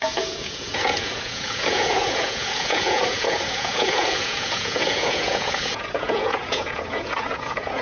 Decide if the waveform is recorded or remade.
remade